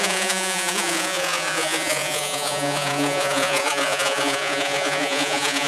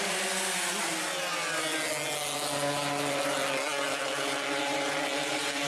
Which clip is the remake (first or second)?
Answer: first